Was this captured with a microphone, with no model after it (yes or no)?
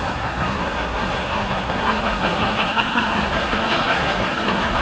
no